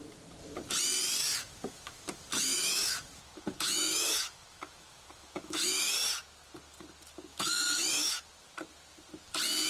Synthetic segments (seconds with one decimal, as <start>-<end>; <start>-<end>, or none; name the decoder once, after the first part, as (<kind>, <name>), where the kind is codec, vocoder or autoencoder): 1.3-5.9 (autoencoder, DAC-VAE); 7.3-8.2